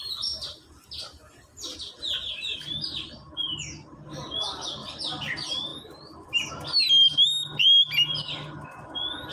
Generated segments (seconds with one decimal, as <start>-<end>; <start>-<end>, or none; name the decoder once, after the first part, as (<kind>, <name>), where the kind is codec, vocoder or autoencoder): 5.7-6.5 (vocoder, BigVGAN v2)